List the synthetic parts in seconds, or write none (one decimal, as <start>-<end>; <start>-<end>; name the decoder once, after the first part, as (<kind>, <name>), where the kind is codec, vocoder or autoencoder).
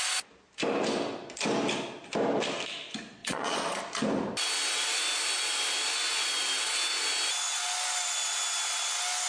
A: 3.2-3.8 (vocoder, Vocos)